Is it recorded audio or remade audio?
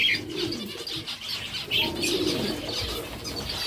recorded